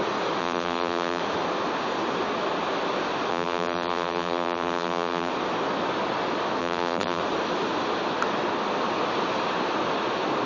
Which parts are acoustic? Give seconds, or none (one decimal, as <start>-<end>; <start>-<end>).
0.0-0.4; 1.2-3.3; 5.3-6.6; 7.2-10.5